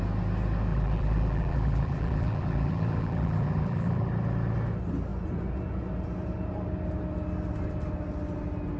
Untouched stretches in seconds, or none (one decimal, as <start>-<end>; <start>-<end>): 0.0-0.7; 4.1-8.8